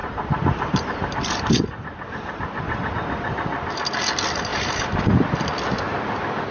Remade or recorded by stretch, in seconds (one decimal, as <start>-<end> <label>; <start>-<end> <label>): 0.0-2.9 remade; 2.9-4.5 recorded; 4.5-5.1 remade; 5.1-6.5 recorded